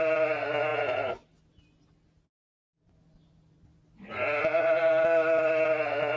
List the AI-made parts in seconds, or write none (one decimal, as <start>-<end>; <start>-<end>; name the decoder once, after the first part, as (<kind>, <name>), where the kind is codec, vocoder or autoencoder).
none